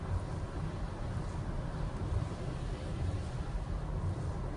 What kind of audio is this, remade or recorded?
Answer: recorded